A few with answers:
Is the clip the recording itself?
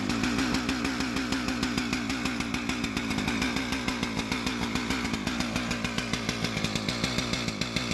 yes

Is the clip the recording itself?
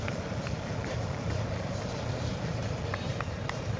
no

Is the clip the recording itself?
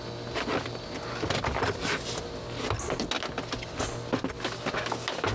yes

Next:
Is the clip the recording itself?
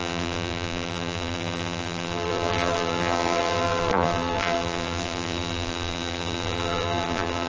no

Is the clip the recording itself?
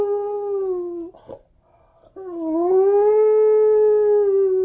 yes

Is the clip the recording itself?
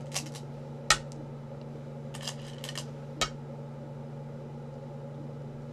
yes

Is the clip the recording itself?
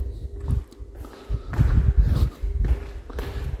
yes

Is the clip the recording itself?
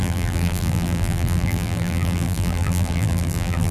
no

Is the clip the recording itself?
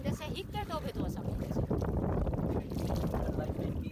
no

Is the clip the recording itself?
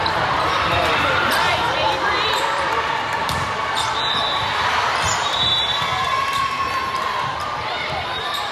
no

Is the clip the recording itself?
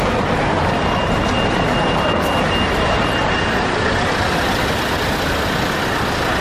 yes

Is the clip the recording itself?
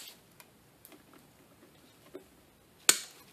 yes